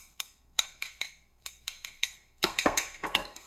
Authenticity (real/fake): fake